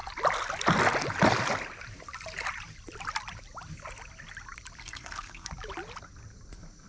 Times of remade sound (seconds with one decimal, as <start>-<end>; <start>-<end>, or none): 4.8-5.5